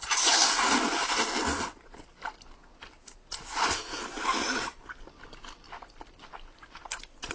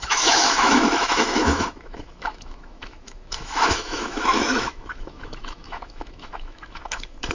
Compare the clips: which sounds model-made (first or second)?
second